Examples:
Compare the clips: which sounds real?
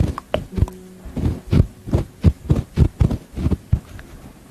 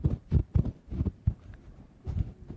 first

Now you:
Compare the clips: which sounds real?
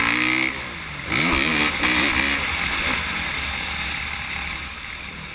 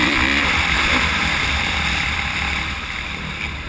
first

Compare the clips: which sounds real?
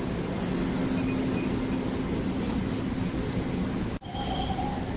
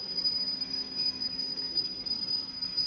first